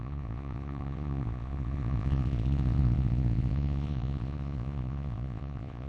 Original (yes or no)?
no